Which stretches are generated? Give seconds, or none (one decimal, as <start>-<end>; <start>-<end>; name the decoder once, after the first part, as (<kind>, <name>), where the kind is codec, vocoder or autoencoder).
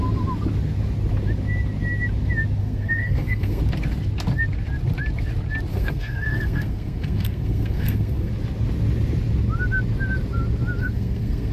2.6-3.6 (codec, SNAC); 5.7-8.3; 10.8-11.5